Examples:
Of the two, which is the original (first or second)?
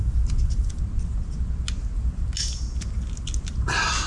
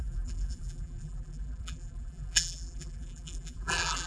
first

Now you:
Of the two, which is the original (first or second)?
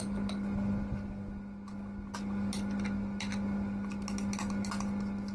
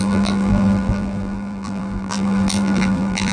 first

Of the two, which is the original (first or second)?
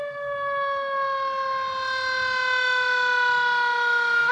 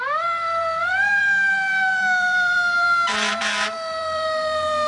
first